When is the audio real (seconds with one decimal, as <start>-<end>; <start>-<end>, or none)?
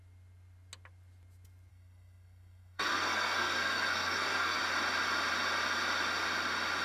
0.0-1.7; 4.6-6.8